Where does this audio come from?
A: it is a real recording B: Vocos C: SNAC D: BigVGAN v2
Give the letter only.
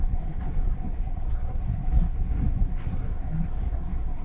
C